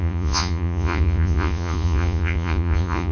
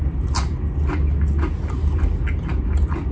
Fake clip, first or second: first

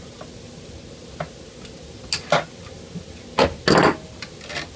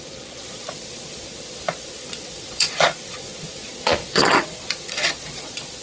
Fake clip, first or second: second